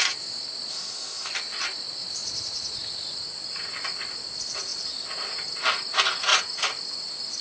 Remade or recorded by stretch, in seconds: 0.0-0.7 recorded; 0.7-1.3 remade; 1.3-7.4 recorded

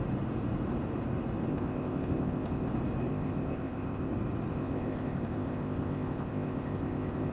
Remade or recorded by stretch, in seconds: 0.0-1.5 recorded; 1.5-2.7 remade; 2.7-3.1 recorded; 3.1-4.1 remade; 4.1-4.5 recorded; 4.5-7.3 remade

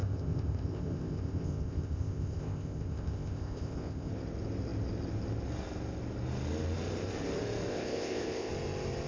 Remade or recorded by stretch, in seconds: 0.0-4.1 remade; 4.1-7.7 recorded; 7.7-8.5 remade; 8.5-9.1 recorded

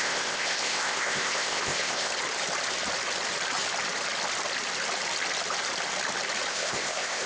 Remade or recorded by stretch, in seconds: 0.0-2.1 remade; 2.1-6.5 recorded; 6.5-7.3 remade

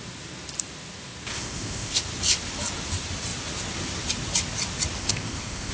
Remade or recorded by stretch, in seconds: 0.0-1.3 recorded; 1.3-2.0 remade; 2.0-5.0 recorded; 5.0-5.7 remade

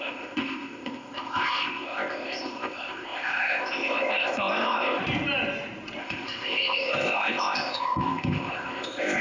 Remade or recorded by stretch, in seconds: 0.0-5.0 remade; 5.0-6.0 recorded; 6.0-9.2 remade

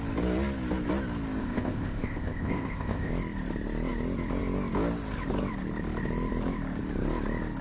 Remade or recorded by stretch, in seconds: 0.0-1.4 recorded; 1.4-3.1 remade; 3.1-7.6 recorded